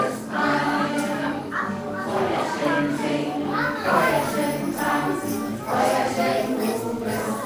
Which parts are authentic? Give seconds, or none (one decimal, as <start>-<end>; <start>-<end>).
4.4-5.3